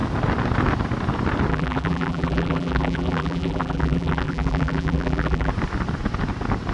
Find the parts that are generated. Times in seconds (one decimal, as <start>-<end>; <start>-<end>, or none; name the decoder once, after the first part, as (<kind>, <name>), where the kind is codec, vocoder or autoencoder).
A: 1.5-5.5 (vocoder, BigVGAN v2)